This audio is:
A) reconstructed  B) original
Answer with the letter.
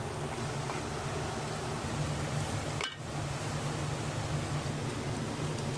B